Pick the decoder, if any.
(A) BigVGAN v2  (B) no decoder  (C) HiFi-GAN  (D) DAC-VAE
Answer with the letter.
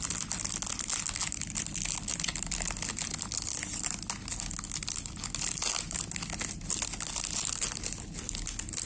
B